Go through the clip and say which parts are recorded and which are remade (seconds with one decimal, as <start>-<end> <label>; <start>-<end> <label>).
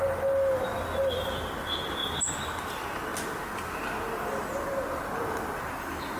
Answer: 0.0-6.2 recorded